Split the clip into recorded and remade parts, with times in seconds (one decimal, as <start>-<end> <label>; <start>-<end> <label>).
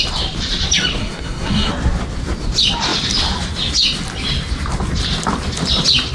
0.0-1.0 recorded; 1.0-1.7 remade; 1.7-6.1 recorded